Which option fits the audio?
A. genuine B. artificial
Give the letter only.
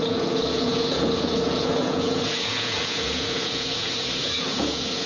B